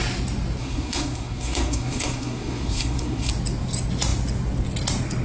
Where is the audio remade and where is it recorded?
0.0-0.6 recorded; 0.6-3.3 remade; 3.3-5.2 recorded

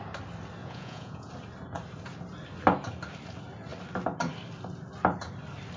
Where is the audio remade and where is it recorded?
0.0-0.6 recorded; 0.6-1.3 remade; 1.3-5.8 recorded

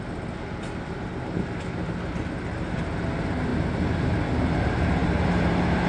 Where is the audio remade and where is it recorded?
0.0-5.0 recorded; 5.0-5.9 remade

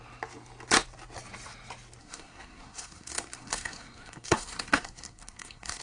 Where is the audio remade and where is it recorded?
0.0-2.0 recorded; 2.0-5.8 remade